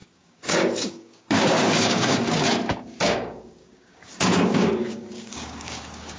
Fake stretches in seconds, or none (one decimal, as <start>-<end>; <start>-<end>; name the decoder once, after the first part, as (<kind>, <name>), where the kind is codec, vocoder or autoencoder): 0.0-6.2 (codec, DAC)